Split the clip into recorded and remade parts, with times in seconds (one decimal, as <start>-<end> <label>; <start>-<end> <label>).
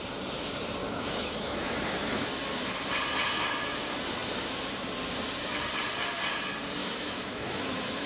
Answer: 0.0-0.8 recorded; 0.8-2.3 remade; 2.3-6.8 recorded; 6.8-8.1 remade